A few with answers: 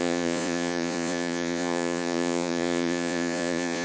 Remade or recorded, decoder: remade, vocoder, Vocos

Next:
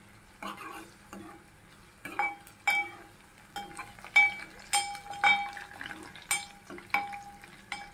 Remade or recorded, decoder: recorded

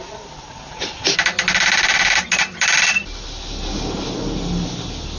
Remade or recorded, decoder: recorded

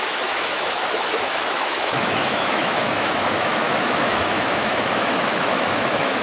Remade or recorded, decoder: remade, autoencoder, DAC-VAE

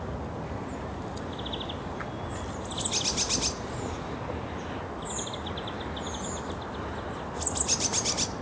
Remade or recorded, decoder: recorded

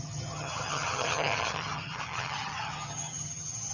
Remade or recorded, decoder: remade, vocoder, HiFi-GAN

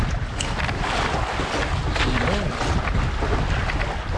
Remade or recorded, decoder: recorded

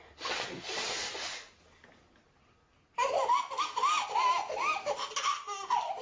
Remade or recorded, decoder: recorded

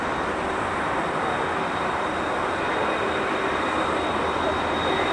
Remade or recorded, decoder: recorded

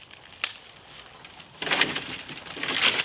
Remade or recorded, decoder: recorded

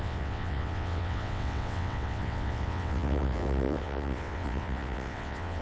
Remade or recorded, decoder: remade, vocoder, WaveNeXt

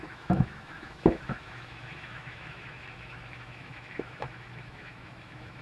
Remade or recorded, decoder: remade, autoencoder, DAC-VAE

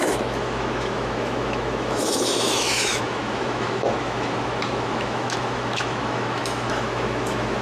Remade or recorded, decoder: remade, autoencoder, DAC-VAE